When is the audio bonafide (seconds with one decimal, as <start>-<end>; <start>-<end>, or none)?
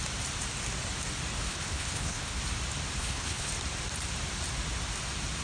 0.0-1.5; 2.4-3.0; 3.5-5.4